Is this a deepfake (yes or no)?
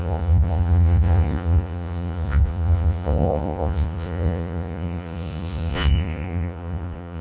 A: yes